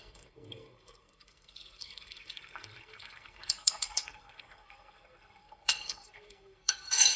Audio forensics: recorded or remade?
remade